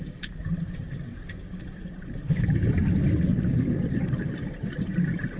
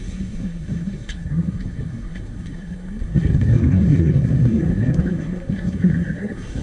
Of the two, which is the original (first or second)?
first